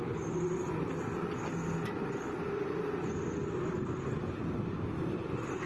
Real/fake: real